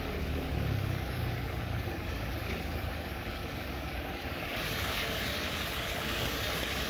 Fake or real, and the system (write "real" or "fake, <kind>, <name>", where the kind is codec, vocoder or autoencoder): fake, codec, DAC